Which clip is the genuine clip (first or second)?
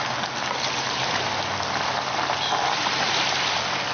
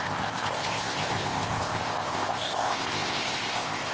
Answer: first